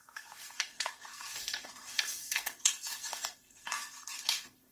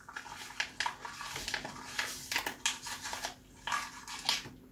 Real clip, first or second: second